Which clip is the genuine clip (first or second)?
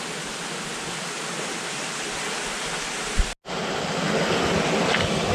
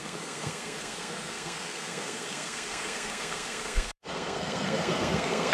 first